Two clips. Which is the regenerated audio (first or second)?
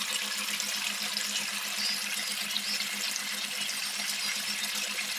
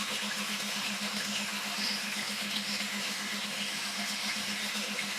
second